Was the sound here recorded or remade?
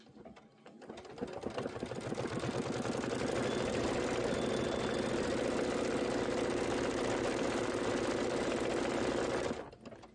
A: recorded